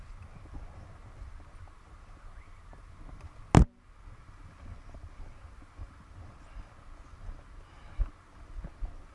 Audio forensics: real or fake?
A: real